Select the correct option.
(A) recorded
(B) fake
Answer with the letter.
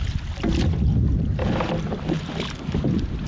A